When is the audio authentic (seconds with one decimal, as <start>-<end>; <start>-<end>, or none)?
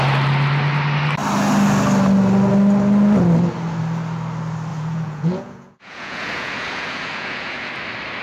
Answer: 0.0-4.7; 7.7-8.2